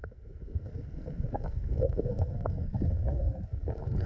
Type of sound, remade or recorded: remade